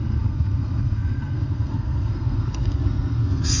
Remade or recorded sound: remade